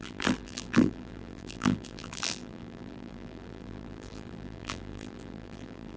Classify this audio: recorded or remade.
remade